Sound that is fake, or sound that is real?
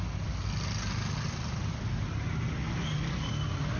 real